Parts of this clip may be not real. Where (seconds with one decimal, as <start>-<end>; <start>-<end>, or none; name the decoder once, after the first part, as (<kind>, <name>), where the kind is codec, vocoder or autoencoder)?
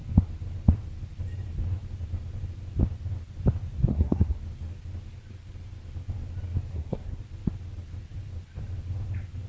3.9-4.4 (codec, SNAC); 6.7-7.2